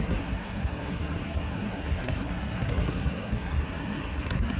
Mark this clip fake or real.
fake